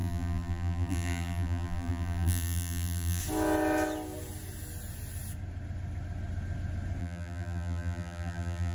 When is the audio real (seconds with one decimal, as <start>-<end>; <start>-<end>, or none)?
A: 3.2-7.0